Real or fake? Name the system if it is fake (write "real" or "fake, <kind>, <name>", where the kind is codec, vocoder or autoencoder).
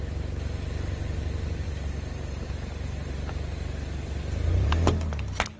real